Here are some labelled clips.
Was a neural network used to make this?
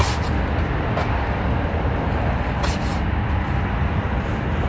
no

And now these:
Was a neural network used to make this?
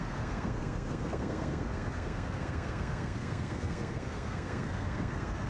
yes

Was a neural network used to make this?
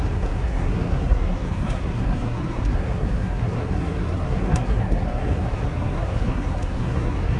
yes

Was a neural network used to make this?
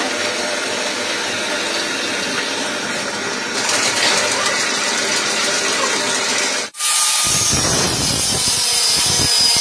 no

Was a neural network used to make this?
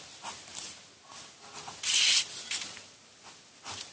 no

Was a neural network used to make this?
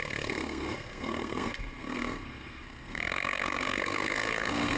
yes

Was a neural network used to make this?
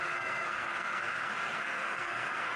yes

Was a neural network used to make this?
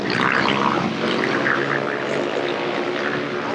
no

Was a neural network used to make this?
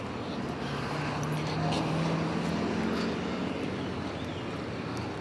no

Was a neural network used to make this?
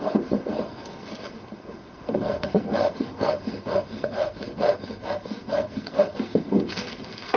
yes